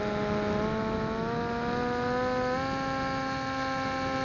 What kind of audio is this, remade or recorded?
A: recorded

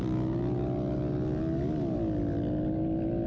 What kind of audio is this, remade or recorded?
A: recorded